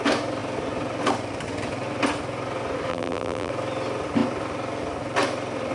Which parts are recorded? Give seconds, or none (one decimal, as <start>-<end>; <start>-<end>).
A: 0.0-2.9; 3.5-5.7